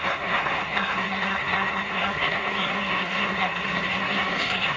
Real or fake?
fake